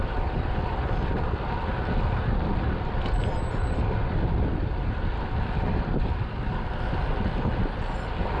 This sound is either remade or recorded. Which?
recorded